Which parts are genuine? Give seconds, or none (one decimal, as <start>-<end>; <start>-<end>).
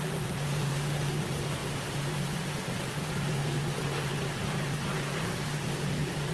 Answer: 0.0-0.6; 1.2-6.3